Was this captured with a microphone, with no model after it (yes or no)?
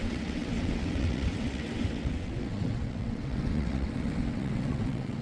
no